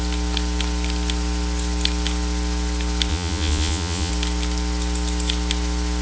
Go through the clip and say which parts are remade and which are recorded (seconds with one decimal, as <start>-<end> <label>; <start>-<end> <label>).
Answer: 0.0-3.1 recorded; 3.1-4.1 remade; 4.1-6.0 recorded